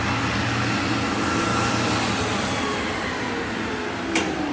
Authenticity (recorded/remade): recorded